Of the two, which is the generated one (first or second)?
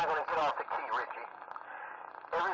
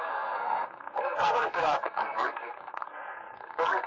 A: second